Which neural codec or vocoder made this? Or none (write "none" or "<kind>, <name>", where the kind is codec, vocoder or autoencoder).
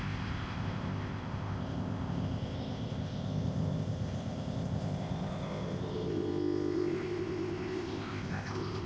codec, ZipCodec